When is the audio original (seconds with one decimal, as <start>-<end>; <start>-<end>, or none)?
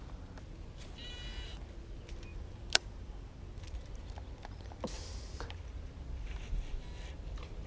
0.0-1.0; 1.6-2.3; 3.7-7.7